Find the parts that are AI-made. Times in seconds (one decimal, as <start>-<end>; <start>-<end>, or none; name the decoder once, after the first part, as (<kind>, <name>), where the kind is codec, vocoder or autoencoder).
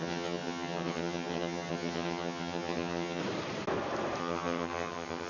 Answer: 0.0-3.2 (vocoder, HiFi-GAN); 4.2-5.3